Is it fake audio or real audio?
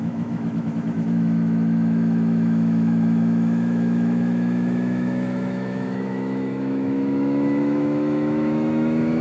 fake